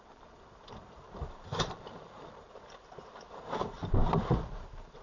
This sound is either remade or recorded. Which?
remade